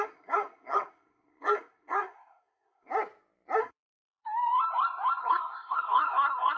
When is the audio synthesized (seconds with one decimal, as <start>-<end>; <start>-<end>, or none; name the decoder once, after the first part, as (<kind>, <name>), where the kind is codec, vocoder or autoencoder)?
0.0-2.9 (codec, SNAC); 3.6-4.2; 5.2-6.6